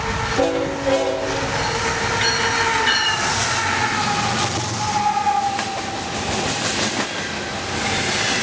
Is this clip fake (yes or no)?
no